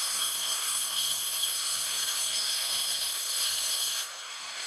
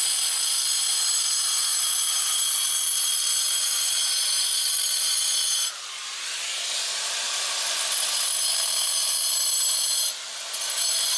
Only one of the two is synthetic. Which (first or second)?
first